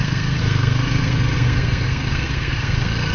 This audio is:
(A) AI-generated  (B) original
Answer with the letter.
A